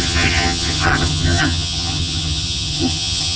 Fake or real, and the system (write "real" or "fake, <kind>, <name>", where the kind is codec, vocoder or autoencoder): fake, vocoder, HiFi-GAN